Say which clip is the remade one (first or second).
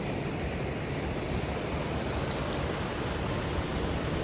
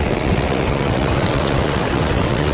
second